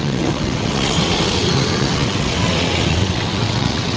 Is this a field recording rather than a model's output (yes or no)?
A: no